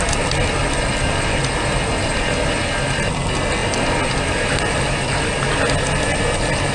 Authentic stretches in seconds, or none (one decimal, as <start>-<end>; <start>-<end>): 0.0-6.7